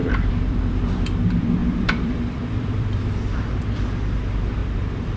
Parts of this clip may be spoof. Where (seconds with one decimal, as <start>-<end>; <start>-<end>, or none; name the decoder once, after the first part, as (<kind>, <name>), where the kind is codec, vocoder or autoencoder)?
0.0-0.6 (vocoder, BigVGAN v2); 1.6-3.8; 4.6-5.2